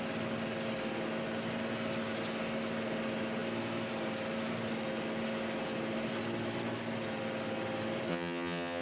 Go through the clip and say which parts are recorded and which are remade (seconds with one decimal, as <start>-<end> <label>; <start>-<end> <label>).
0.0-8.1 recorded; 8.1-8.8 remade